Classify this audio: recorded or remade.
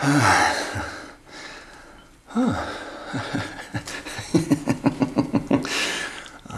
recorded